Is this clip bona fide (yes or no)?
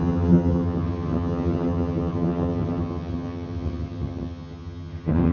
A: no